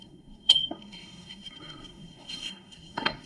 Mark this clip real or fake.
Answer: fake